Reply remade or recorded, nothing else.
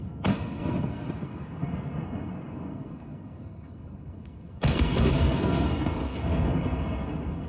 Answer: remade